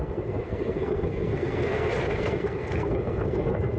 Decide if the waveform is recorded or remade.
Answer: remade